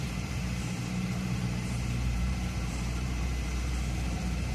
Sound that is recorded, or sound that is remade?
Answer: remade